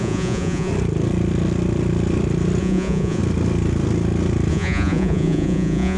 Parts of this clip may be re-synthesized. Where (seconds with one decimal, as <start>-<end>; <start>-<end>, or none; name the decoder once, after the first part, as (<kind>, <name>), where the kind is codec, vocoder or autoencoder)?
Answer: 0.0-0.7 (vocoder, Vocos); 2.6-3.2; 4.5-6.0